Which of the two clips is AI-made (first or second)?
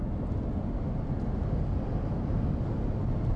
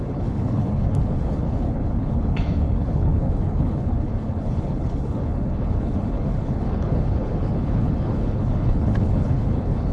second